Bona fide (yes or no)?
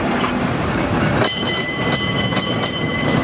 no